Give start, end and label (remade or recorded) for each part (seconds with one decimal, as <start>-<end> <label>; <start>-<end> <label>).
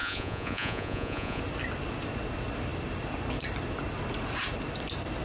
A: 0.0-1.4 remade; 1.4-5.2 recorded